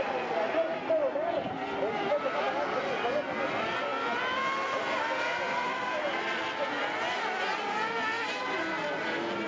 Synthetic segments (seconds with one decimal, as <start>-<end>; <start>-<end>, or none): none